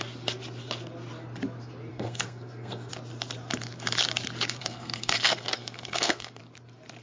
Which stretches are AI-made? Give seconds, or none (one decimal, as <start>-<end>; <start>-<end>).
1.9-2.9; 4.6-6.4